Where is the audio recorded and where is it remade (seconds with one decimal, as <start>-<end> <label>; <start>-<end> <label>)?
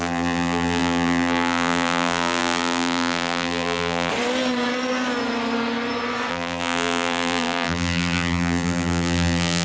0.0-4.1 remade; 4.1-6.3 recorded; 6.3-9.6 remade